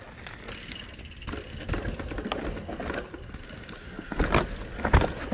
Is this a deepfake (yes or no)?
no